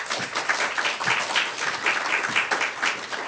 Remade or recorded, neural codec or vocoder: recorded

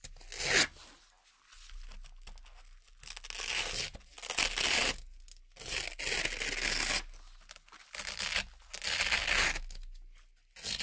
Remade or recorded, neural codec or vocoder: recorded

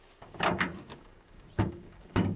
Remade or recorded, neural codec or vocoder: remade, codec, DAC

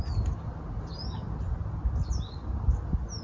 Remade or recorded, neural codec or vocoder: recorded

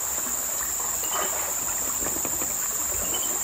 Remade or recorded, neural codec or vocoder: recorded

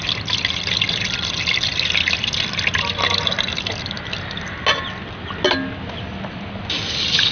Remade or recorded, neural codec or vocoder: recorded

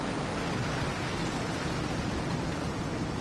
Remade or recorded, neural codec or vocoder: recorded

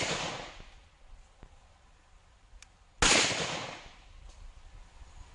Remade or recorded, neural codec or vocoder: recorded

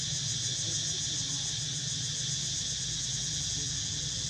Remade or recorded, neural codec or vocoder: recorded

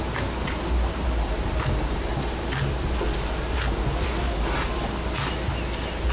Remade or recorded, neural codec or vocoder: recorded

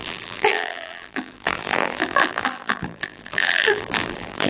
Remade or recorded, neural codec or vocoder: remade, vocoder, BigVGAN v2